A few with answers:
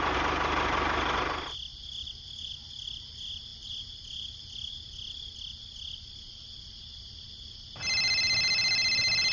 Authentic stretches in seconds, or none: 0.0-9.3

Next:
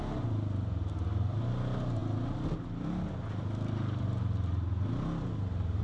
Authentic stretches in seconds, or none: 0.0-5.8

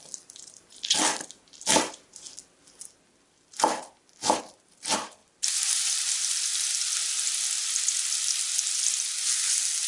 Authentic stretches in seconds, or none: 0.0-5.2; 5.9-9.9

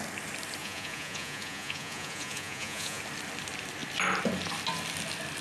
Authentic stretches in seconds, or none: 0.0-0.6; 3.0-5.4